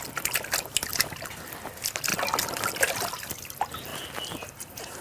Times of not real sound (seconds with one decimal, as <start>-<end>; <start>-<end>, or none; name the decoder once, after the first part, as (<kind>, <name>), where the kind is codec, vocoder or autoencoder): 0.9-1.7 (vocoder, BigVGAN v2); 2.1-3.3; 3.9-5.0